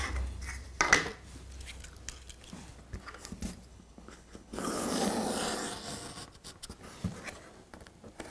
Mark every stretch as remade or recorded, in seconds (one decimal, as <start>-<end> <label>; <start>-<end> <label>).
0.0-3.7 recorded; 3.7-4.9 remade; 4.9-8.3 recorded